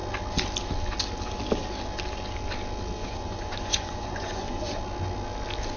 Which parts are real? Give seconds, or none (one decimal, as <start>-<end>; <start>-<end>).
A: 0.0-3.0; 4.8-5.8

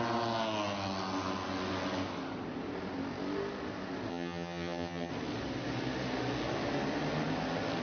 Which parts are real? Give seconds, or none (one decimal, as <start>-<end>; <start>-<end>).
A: 0.0-4.1; 5.1-7.8

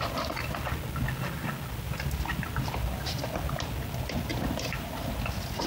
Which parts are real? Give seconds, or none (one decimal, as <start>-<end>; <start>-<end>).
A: 0.0-4.3; 5.1-5.7

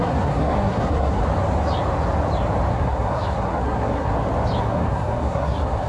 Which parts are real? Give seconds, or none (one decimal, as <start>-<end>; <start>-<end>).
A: 1.2-2.7; 4.1-4.6

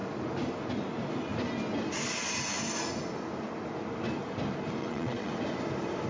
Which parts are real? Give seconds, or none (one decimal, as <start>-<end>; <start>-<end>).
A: 0.0-4.8; 5.3-6.1